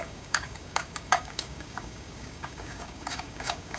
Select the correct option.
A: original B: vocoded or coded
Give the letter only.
B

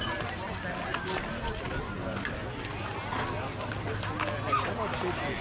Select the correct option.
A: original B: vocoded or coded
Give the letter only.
A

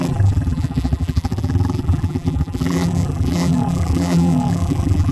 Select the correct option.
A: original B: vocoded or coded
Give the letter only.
B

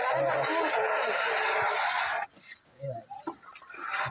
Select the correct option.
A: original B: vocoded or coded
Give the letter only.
A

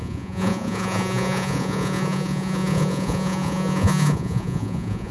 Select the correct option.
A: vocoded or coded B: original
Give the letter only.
A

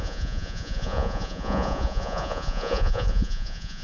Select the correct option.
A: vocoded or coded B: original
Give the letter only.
A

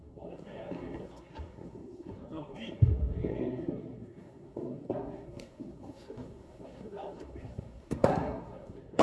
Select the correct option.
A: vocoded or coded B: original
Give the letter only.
A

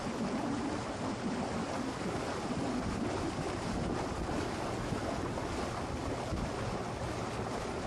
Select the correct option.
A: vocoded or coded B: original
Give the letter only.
B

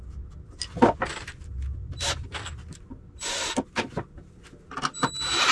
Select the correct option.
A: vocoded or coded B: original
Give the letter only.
A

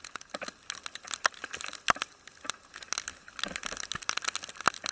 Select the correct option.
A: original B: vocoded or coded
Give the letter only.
A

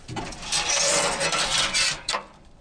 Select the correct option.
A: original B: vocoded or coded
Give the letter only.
B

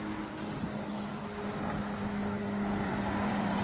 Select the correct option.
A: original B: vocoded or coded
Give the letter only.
B